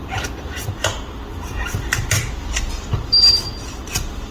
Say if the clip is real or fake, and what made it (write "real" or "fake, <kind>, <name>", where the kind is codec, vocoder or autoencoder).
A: real